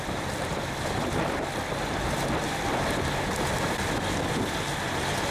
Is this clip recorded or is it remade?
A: recorded